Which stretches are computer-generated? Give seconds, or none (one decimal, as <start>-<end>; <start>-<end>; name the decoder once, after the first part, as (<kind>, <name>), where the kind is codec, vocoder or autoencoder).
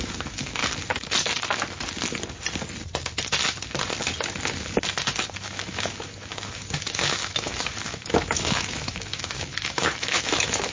0.0-0.6 (autoencoder, DAC-VAE); 5.3-10.7